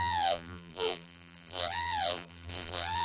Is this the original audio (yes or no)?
no